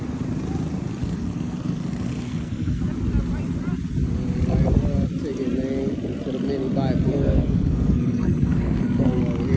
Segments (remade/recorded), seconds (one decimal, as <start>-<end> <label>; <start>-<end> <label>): 0.0-1.0 recorded; 1.0-2.8 remade; 2.8-7.1 recorded; 7.1-9.2 remade; 9.2-9.6 recorded